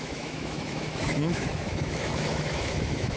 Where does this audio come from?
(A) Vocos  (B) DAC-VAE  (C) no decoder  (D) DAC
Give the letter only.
B